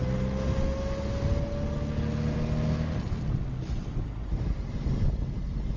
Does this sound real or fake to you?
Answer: real